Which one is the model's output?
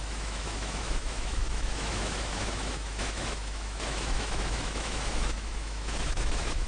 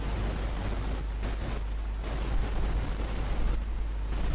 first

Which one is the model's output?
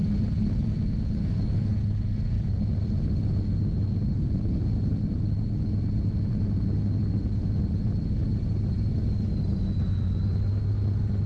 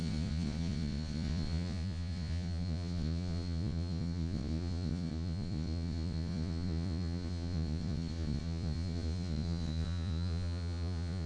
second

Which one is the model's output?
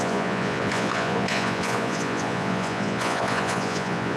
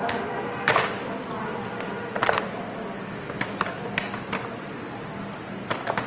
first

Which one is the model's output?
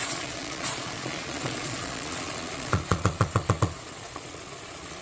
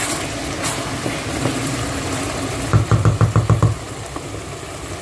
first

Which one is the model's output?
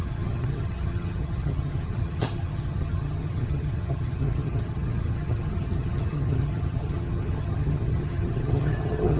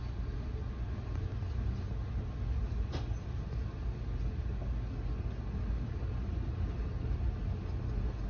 first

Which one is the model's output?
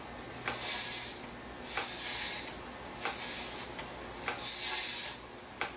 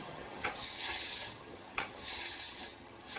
second